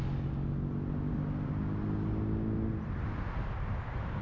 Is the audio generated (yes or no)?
no